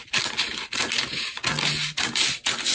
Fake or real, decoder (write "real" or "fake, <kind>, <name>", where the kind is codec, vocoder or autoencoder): real